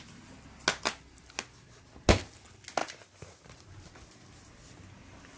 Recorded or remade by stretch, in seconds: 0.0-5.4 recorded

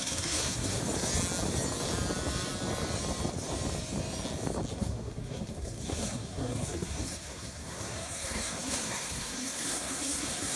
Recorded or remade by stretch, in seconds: 0.0-0.8 remade; 0.8-4.7 recorded; 4.7-10.6 remade

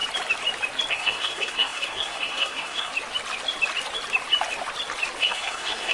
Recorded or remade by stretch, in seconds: 0.0-0.9 recorded; 0.9-2.9 remade; 2.9-5.2 recorded; 5.2-5.9 remade

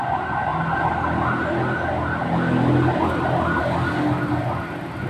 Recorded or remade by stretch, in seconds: 0.0-5.1 recorded

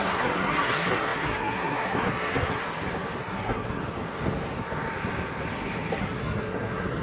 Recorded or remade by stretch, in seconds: 0.0-2.6 remade; 2.6-3.2 recorded; 3.2-3.8 remade; 3.8-6.0 recorded; 6.0-7.0 remade